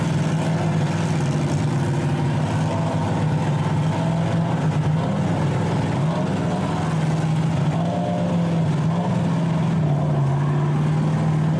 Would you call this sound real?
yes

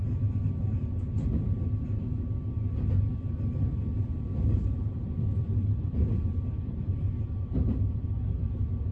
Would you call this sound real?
no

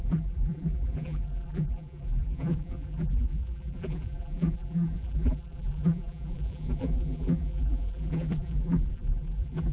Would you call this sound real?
no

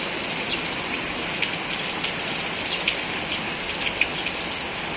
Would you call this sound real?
no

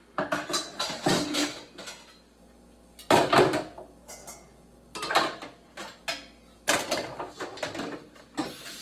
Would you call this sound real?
yes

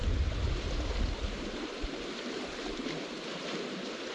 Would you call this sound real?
no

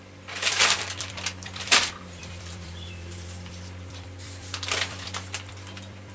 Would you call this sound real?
no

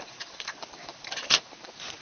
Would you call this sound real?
no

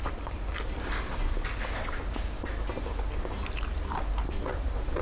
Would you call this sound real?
yes